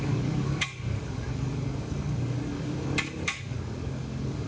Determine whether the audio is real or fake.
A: fake